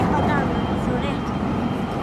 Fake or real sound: real